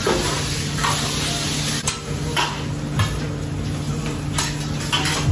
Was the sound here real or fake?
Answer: real